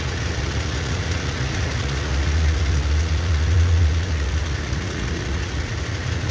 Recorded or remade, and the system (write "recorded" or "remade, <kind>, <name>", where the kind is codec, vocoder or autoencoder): remade, vocoder, Vocos